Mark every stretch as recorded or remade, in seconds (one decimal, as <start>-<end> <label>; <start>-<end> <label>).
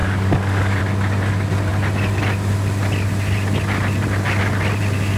0.0-0.8 remade; 0.8-5.2 recorded